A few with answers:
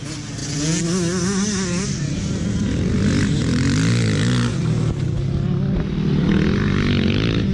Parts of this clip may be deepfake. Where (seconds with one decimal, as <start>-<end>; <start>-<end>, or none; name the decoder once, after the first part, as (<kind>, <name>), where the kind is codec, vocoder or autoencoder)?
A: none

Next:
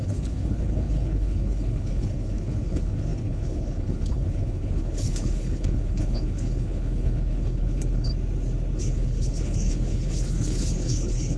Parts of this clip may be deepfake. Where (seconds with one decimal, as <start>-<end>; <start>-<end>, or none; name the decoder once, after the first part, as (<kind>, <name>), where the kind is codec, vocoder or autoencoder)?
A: 0.0-8.1 (codec, HILCodec); 8.8-11.4

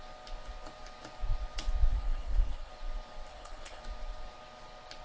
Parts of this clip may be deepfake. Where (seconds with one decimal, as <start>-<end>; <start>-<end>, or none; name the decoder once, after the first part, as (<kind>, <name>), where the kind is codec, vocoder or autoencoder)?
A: 1.9-2.7 (codec, HILCodec); 3.3-3.8